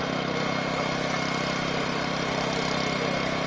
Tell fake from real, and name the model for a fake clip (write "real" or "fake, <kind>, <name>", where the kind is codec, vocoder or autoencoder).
real